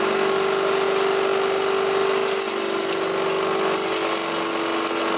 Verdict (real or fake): real